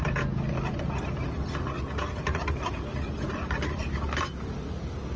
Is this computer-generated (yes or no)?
no